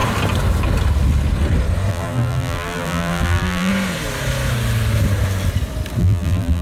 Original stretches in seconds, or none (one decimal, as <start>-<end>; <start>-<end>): 0.0-1.9; 3.7-6.0